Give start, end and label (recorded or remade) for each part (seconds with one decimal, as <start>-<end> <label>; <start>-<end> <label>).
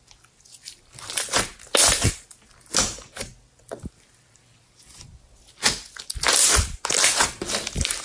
0.0-8.0 recorded